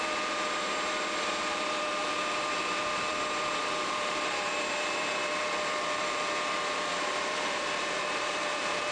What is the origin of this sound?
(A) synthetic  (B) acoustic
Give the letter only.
A